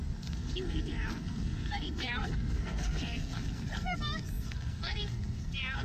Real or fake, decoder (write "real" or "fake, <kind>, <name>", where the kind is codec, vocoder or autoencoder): fake, codec, SNAC